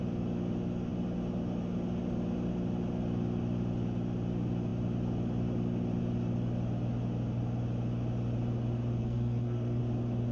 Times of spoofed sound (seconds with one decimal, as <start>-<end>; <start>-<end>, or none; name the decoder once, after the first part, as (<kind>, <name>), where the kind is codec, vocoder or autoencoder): 9.0-9.8 (codec, SNAC)